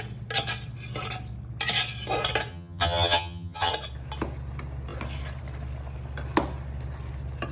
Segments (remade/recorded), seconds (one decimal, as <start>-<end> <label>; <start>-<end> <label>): 0.0-2.5 recorded; 2.5-3.7 remade; 3.7-7.5 recorded